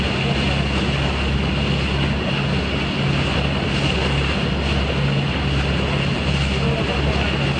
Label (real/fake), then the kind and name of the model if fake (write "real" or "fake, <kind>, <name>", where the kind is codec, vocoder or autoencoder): real